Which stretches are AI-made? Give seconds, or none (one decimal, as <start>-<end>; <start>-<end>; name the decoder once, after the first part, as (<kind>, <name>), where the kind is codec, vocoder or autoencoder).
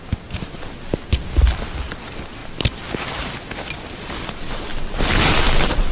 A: none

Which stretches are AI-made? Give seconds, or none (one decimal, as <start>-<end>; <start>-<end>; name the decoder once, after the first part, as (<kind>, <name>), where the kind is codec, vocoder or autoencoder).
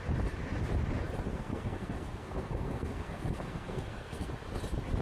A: 1.3-4.3 (codec, SNAC)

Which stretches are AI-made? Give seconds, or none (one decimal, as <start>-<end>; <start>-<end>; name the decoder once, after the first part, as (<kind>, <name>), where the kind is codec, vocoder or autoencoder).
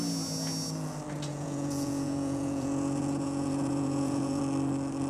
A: 1.3-4.4 (vocoder, Vocos)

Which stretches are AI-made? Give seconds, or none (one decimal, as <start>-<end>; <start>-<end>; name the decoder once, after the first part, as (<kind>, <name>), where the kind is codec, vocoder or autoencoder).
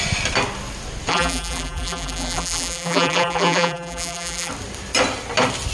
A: 1.1-4.5 (vocoder, BigVGAN v2)